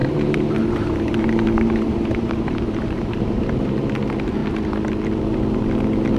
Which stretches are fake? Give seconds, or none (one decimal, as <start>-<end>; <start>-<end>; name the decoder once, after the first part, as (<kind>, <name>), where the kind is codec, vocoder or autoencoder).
0.0-3.7 (vocoder, BigVGAN v2)